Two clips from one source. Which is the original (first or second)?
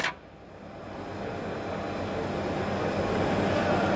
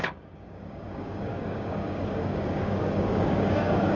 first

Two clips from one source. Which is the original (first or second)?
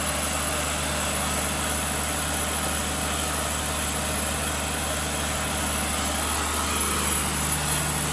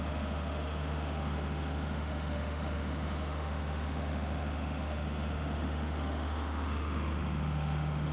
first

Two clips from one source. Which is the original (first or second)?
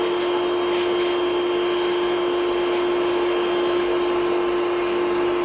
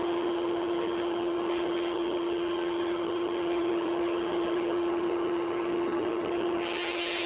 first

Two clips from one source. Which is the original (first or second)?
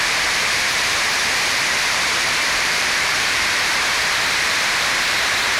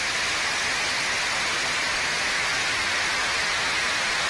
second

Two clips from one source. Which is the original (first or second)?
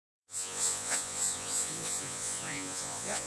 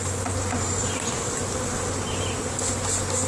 second